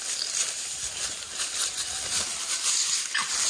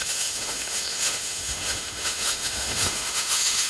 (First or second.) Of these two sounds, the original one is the first